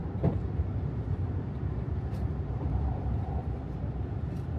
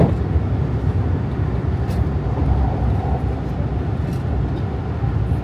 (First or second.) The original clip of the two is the second